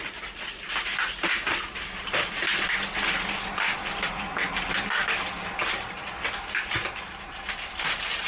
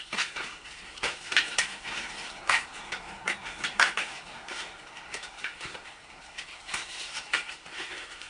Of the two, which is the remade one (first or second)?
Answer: second